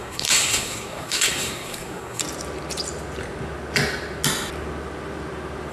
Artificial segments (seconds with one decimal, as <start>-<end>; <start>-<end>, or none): 0.0-2.2